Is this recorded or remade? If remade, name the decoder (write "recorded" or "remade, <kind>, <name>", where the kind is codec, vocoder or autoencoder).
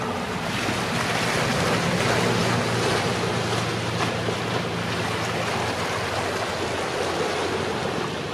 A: recorded